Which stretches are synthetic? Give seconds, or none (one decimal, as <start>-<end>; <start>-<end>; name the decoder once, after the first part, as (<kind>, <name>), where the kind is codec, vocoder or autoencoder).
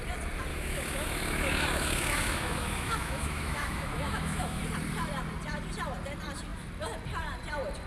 0.5-4.6 (autoencoder, DAC-VAE)